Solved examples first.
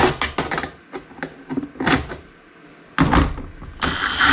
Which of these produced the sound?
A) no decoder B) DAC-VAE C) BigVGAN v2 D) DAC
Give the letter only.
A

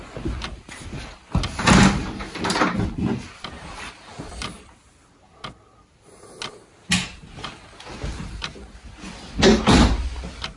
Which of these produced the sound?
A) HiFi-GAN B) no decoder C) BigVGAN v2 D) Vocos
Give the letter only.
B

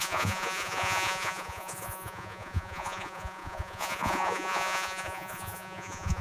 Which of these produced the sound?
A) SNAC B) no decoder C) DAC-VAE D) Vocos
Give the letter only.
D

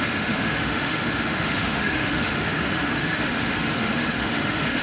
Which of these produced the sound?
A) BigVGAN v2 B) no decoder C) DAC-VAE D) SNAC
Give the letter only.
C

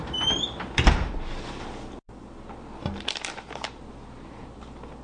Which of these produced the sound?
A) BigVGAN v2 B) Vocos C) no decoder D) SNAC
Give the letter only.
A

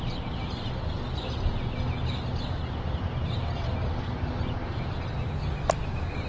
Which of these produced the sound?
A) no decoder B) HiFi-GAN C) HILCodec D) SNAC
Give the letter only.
A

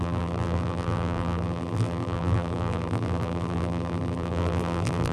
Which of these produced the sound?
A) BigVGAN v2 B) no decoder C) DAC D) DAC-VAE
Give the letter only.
A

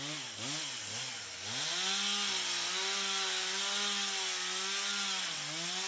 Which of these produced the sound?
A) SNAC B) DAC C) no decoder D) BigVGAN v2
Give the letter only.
C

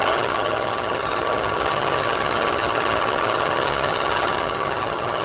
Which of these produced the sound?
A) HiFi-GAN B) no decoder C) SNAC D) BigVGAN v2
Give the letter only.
A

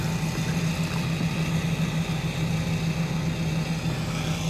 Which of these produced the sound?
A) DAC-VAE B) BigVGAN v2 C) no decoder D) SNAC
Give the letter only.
C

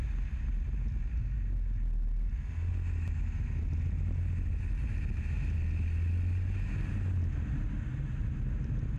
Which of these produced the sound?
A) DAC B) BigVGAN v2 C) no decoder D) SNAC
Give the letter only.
C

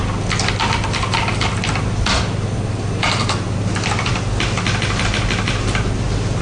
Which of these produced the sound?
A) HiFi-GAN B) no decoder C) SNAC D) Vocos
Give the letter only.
B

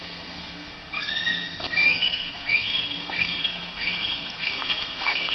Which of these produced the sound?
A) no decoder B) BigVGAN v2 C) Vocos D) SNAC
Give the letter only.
D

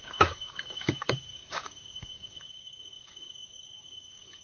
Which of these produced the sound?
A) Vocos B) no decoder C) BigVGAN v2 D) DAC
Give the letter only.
D